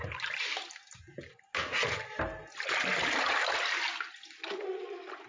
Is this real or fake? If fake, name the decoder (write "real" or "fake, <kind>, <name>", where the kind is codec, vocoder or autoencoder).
real